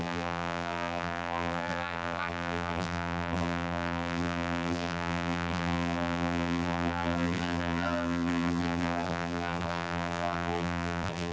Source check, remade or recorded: remade